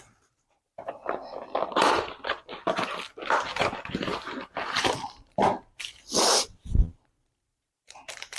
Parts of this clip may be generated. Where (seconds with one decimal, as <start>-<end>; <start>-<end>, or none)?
0.0-1.2; 3.4-8.4